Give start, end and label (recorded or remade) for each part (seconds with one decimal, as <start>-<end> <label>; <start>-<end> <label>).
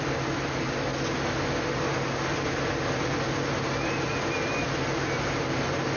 0.0-6.0 recorded